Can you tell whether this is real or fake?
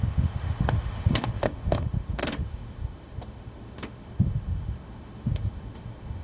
fake